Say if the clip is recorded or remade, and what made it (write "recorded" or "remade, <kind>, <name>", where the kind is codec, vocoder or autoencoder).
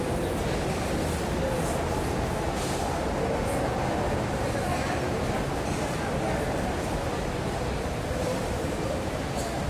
recorded